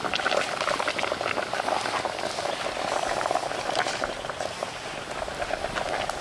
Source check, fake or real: real